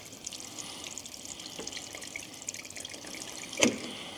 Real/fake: fake